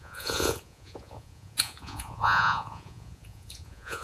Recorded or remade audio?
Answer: remade